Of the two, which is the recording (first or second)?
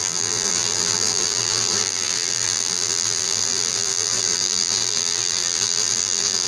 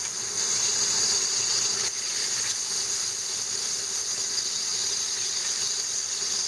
second